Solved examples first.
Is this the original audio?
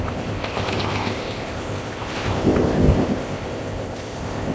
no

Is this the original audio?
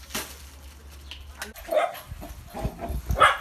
yes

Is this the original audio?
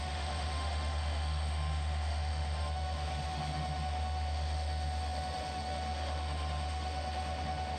no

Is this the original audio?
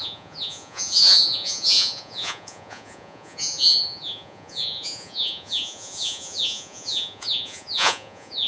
no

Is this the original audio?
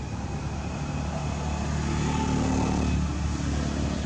yes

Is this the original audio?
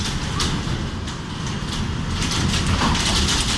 yes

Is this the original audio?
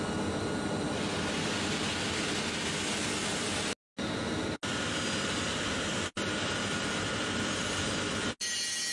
yes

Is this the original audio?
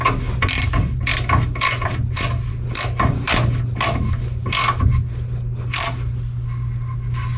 yes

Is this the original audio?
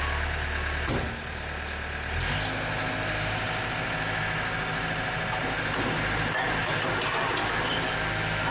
yes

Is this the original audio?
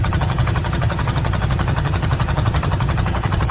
no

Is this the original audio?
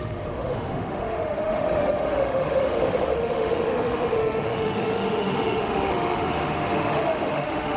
no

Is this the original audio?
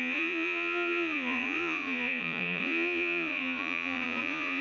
no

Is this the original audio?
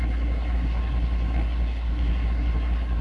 no